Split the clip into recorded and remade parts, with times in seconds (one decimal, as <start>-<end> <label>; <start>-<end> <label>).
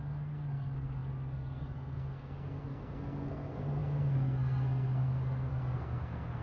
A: 0.0-6.4 remade